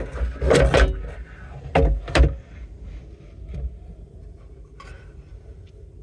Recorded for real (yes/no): yes